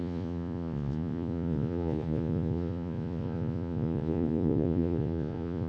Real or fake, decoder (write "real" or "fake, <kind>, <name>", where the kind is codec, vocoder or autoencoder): fake, vocoder, Vocos